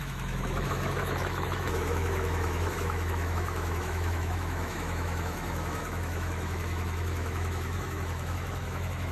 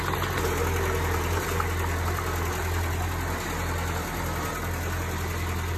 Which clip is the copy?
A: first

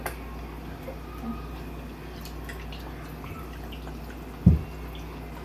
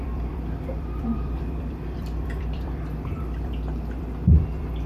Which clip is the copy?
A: second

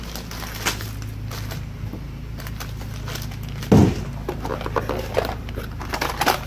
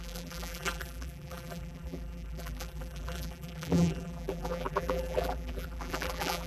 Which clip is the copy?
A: second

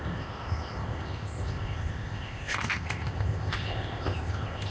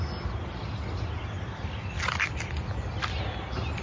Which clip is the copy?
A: first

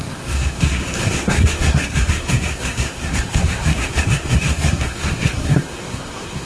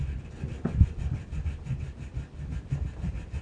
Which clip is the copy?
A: first